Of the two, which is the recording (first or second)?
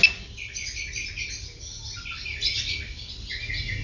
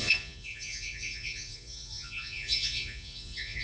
first